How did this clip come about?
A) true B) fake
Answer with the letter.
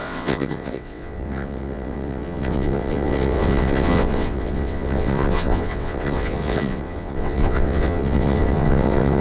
B